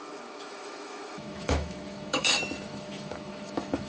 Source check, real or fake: fake